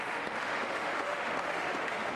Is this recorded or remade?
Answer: remade